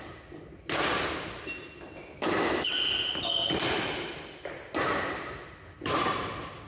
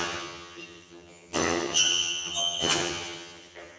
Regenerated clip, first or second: second